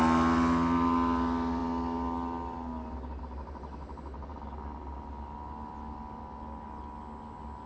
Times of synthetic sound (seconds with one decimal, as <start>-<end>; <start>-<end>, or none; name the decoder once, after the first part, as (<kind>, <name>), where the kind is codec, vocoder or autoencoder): none

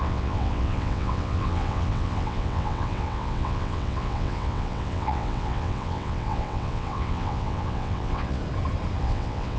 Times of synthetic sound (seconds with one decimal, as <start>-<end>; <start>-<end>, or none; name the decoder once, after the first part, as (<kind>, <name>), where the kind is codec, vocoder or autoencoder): 0.0-8.4 (vocoder, WaveNeXt); 9.0-9.6

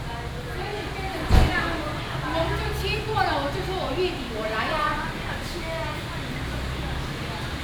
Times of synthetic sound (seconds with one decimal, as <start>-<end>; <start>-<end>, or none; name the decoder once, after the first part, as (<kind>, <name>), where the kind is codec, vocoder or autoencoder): none

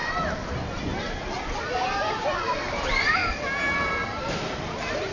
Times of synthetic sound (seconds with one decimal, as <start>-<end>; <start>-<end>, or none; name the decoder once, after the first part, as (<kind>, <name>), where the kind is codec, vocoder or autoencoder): 0.0-3.2 (vocoder, BigVGAN v2); 4.3-5.1

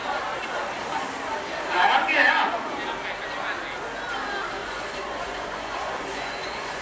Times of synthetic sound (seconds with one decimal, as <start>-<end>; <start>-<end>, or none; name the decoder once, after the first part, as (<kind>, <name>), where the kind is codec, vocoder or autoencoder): 2.0-2.5 (vocoder, Vocos); 4.6-6.8

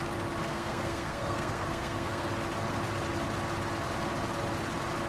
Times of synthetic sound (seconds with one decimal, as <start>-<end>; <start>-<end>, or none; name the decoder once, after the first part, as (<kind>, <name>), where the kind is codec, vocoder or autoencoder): 0.4-2.3 (codec, SNAC)

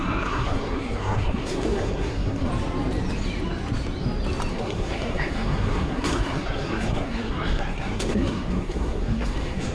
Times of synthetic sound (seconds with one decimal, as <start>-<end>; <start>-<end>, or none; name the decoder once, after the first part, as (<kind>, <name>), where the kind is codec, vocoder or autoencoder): 0.0-2.5 (codec, SNAC); 4.5-9.7

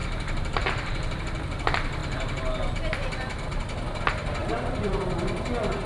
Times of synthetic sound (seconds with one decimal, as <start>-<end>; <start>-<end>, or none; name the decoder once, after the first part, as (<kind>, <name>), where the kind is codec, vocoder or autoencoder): 0.0-0.9 (vocoder, BigVGAN v2); 4.4-5.0